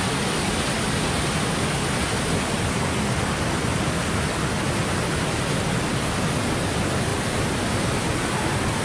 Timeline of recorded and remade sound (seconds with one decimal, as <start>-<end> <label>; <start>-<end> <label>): 0.0-8.8 recorded